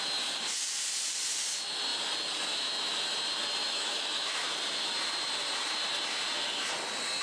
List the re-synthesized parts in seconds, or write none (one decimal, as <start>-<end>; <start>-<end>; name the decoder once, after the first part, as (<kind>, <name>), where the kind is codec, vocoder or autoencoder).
3.6-4.4 (autoencoder, DAC-VAE)